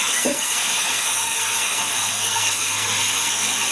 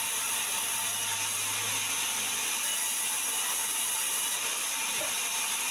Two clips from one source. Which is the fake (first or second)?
first